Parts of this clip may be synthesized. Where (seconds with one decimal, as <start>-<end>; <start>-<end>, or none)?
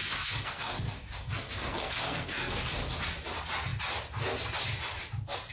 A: 0.0-2.6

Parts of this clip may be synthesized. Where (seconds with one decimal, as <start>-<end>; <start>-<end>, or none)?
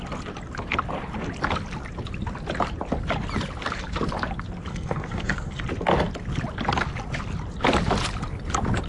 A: 4.7-5.6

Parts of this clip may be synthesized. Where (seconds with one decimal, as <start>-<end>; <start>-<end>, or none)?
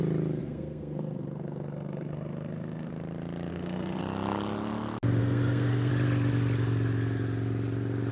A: 0.4-2.9; 3.5-4.0; 5.2-5.9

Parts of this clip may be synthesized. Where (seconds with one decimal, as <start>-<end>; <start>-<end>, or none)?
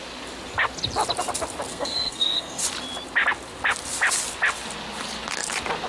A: 1.7-2.6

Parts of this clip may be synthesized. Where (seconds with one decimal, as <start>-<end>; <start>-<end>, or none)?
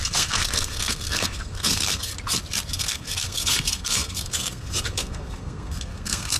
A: 0.0-2.1; 2.7-6.4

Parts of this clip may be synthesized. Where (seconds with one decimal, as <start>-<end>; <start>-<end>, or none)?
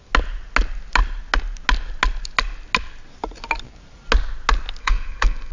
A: 4.8-5.5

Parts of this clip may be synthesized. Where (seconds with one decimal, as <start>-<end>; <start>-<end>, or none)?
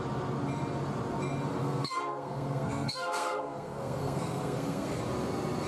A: 1.6-5.0